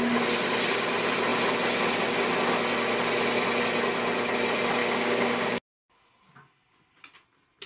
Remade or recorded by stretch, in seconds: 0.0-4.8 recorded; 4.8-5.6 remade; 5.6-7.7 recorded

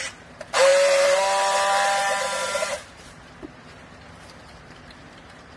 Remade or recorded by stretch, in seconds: 0.0-0.7 recorded; 0.7-4.1 remade; 4.1-5.6 recorded